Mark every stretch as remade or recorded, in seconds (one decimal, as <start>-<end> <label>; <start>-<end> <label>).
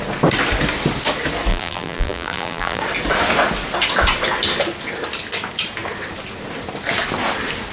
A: 0.0-1.5 recorded; 1.5-2.8 remade; 2.8-7.7 recorded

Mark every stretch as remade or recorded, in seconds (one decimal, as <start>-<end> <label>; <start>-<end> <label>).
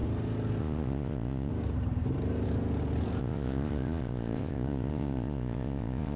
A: 0.0-0.6 recorded; 0.6-1.5 remade; 1.5-3.2 recorded; 3.2-6.2 remade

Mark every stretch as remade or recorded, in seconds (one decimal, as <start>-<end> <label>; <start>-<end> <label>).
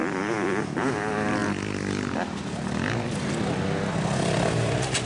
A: 0.0-5.1 recorded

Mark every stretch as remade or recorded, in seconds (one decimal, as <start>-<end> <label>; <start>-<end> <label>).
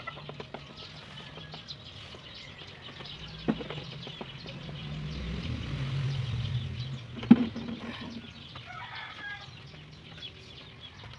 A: 0.0-11.2 recorded